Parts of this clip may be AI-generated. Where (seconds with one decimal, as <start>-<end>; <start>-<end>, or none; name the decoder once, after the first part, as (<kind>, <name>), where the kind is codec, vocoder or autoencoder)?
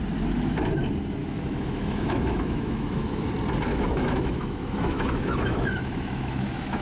1.2-3.3 (autoencoder, DAC-VAE); 3.7-6.8